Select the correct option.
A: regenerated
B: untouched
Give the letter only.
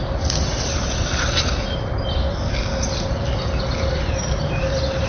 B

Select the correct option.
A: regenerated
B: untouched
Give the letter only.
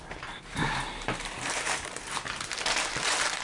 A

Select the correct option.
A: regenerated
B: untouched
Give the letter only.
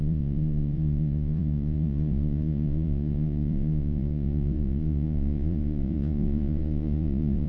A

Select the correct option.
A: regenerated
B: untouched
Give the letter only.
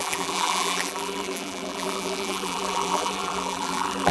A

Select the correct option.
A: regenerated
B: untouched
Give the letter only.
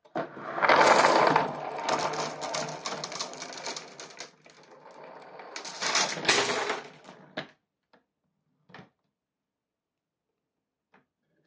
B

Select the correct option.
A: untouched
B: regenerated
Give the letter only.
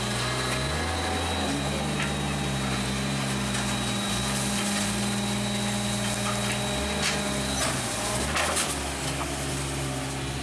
A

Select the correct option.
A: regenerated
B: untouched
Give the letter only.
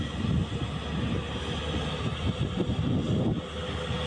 B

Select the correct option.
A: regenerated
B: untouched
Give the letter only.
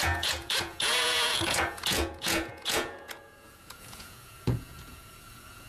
A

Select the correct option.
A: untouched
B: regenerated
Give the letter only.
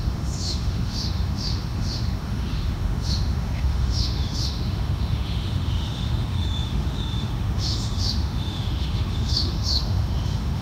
B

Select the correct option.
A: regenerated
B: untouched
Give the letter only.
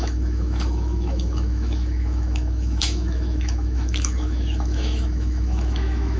A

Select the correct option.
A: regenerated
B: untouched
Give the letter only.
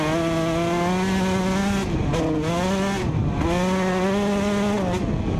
B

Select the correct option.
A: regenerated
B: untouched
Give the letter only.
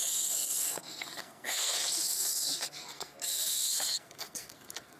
A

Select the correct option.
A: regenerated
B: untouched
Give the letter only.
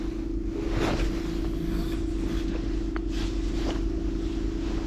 B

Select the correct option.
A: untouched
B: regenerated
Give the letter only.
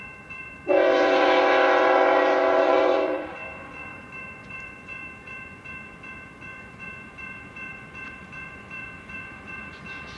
B